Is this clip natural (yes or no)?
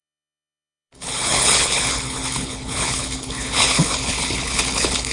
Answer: no